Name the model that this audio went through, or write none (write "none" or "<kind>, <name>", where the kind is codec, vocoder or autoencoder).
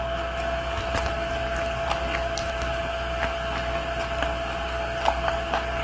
none